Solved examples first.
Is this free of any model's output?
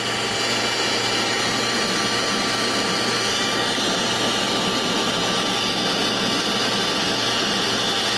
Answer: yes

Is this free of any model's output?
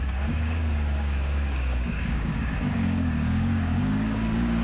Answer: no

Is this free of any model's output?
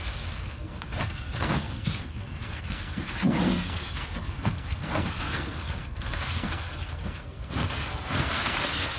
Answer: no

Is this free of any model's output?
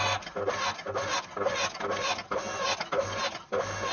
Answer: yes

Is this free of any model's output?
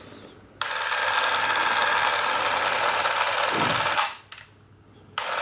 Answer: yes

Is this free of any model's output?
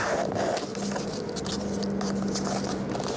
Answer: yes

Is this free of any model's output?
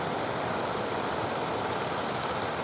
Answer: yes